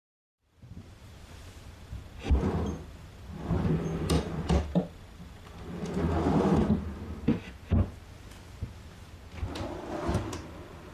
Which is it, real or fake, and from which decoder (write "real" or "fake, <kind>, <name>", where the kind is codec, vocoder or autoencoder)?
real